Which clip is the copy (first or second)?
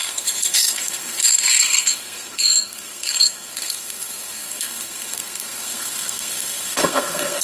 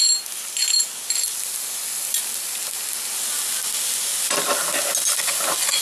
first